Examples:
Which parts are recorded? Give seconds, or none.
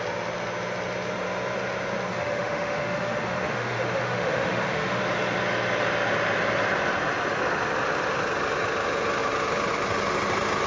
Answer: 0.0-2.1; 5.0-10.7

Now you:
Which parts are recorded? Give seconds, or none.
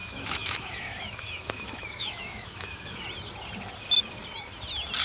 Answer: 3.0-5.0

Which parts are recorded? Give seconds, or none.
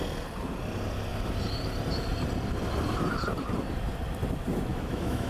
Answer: 0.0-4.7